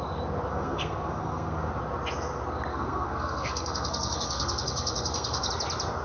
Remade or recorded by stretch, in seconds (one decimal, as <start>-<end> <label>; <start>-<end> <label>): 0.0-0.5 recorded; 0.5-1.7 remade; 1.7-2.7 recorded; 2.7-5.5 remade; 5.5-6.0 recorded